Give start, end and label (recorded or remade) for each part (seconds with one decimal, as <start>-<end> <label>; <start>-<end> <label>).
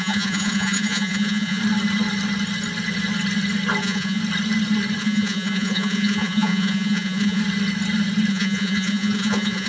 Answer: 0.0-1.6 remade; 1.6-3.8 recorded; 3.8-4.2 remade; 4.2-5.0 recorded; 5.0-7.4 remade; 7.4-8.3 recorded; 8.3-9.7 remade